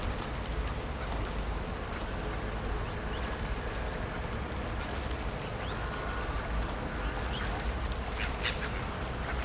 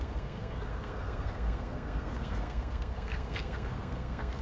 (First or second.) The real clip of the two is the first